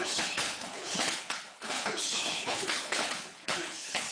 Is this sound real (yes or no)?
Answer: no